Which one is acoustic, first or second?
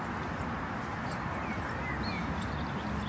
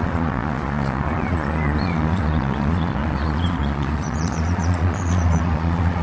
first